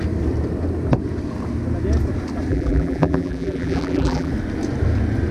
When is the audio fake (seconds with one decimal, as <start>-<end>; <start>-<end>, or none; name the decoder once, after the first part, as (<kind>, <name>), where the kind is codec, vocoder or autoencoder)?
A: 2.5-4.3 (vocoder, BigVGAN v2)